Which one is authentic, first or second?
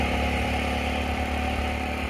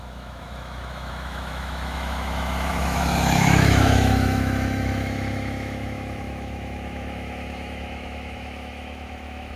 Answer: first